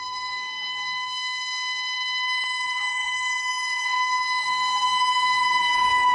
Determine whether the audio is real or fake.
fake